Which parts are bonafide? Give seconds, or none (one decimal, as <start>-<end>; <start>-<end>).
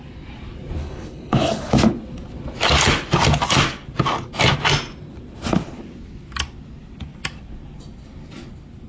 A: 0.0-0.8; 1.7-8.9